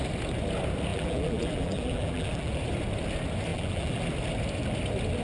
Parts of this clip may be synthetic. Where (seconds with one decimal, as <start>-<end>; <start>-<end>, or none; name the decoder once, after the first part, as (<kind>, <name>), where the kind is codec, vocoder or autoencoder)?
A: 0.9-2.6 (vocoder, BigVGAN v2); 3.5-4.0